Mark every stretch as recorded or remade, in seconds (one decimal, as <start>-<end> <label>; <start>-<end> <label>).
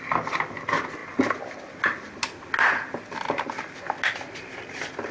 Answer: 0.0-5.1 recorded